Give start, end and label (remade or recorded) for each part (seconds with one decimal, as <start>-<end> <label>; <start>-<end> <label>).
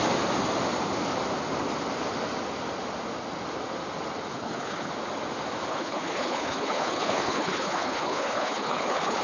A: 0.0-4.3 recorded; 4.3-4.9 remade; 4.9-5.7 recorded; 5.7-9.2 remade